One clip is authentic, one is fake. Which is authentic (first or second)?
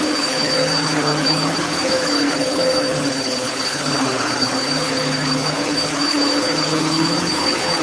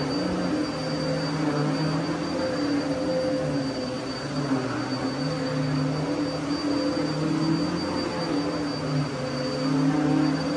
second